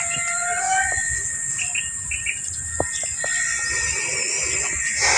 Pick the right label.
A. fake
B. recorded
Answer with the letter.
B